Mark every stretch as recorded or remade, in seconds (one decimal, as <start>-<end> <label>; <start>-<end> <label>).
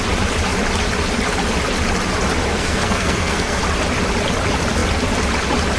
0.0-2.5 recorded; 2.5-3.6 remade; 3.6-5.8 recorded